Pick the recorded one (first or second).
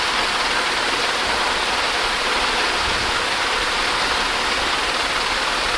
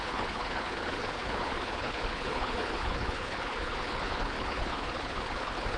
first